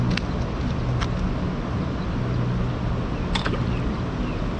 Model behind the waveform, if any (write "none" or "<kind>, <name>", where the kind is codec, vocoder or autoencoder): none